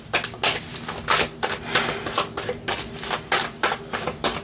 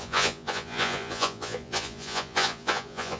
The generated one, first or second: second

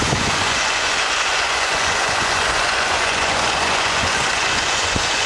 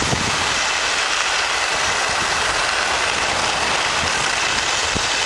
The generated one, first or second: first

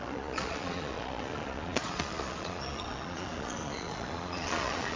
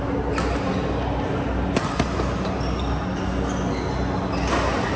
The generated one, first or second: first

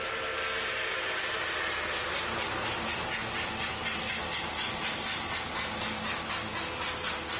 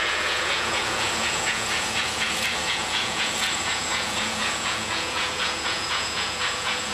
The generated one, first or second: second